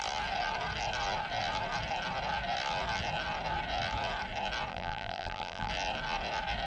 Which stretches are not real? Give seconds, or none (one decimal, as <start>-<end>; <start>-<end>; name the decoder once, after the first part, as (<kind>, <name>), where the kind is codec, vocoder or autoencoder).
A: 4.7-5.7 (vocoder, BigVGAN v2)